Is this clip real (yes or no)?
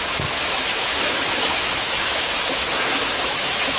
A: no